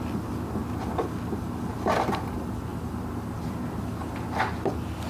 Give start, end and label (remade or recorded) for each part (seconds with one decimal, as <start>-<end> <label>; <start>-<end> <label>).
0.0-5.1 recorded